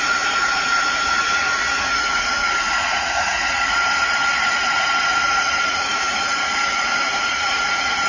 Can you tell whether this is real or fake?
fake